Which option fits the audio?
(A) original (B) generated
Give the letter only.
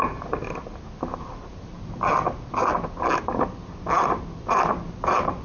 A